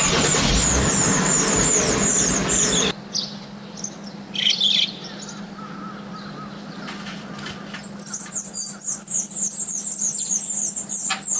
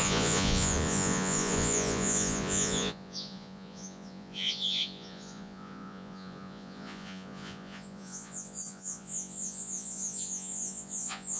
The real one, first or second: first